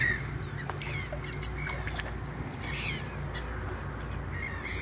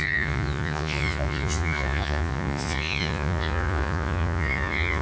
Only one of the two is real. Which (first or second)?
first